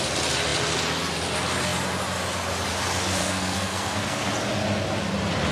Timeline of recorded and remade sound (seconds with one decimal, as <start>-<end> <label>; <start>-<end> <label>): 0.0-3.2 recorded; 3.2-4.3 remade; 4.3-5.5 recorded